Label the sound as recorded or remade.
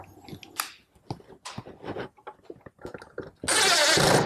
recorded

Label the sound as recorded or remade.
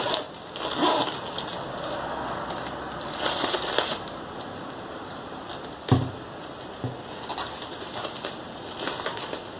recorded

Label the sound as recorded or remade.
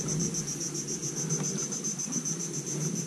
recorded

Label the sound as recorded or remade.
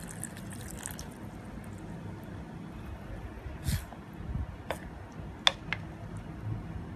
recorded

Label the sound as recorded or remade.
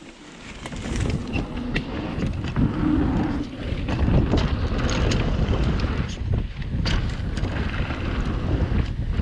recorded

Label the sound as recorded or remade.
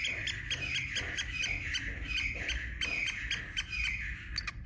recorded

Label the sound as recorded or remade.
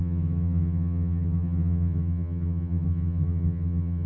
remade